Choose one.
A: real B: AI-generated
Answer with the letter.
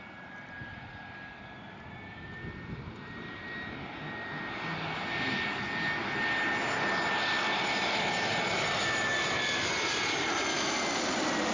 A